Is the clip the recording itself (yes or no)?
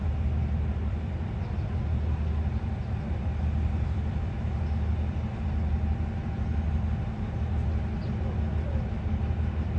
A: yes